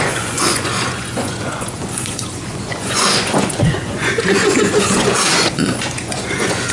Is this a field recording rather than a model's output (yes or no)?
no